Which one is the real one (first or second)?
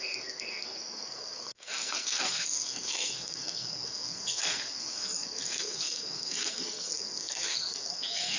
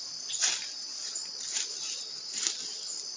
second